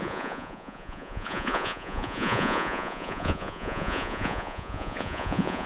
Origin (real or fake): fake